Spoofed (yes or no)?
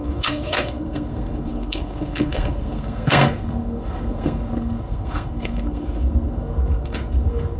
yes